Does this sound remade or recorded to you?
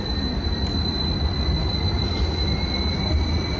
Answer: recorded